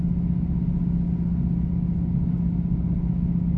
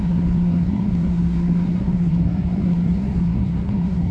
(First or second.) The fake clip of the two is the second